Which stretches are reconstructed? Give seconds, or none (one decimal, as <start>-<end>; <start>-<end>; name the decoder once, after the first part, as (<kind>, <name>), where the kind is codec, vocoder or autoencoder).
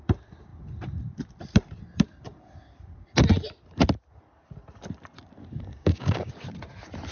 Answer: 5.7-6.3 (codec, DAC)